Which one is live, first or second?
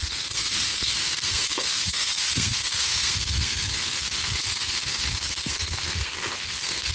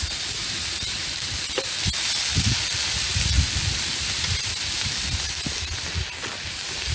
second